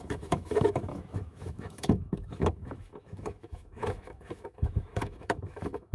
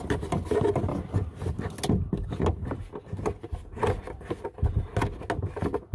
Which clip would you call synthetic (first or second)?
first